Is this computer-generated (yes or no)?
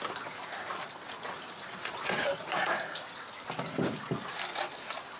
no